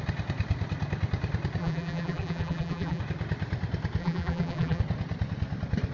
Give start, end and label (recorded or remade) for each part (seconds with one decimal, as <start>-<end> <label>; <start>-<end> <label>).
0.0-1.6 recorded; 1.6-3.0 remade; 3.0-4.0 recorded; 4.0-4.8 remade; 4.8-5.9 recorded